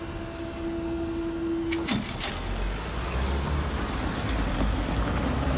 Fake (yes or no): no